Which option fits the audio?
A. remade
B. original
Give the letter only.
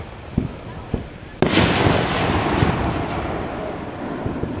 B